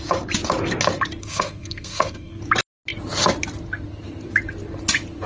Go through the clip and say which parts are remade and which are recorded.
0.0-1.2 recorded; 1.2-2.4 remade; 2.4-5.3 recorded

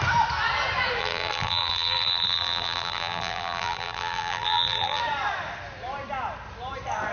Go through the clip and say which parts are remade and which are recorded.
0.0-1.0 recorded; 1.0-5.0 remade; 5.0-7.1 recorded

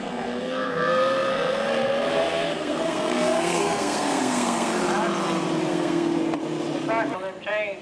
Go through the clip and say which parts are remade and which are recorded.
0.0-4.8 remade; 4.8-5.7 recorded; 5.7-6.2 remade; 6.2-7.8 recorded

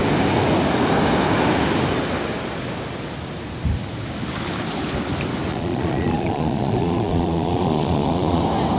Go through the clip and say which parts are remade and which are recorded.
0.0-5.5 recorded; 5.5-8.4 remade; 8.4-8.8 recorded

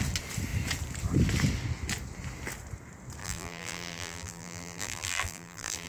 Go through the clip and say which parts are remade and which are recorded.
0.0-3.2 recorded; 3.2-5.9 remade

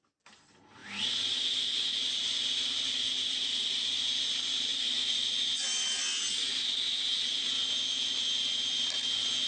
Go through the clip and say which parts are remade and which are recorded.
0.0-0.8 recorded; 0.8-1.4 remade; 1.4-4.7 recorded; 4.7-5.3 remade; 5.3-9.5 recorded

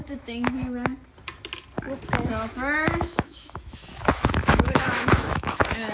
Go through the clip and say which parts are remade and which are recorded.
0.0-0.9 remade; 0.9-2.5 recorded; 2.5-5.9 remade

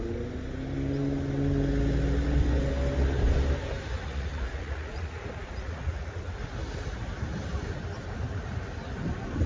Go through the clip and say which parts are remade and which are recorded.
0.0-4.0 recorded; 4.0-6.2 remade; 6.2-9.5 recorded